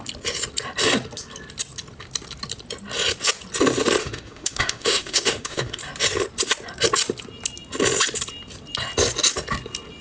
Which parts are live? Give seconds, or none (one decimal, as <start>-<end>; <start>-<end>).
0.0-4.0; 5.8-10.0